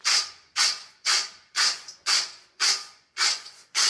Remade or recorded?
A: remade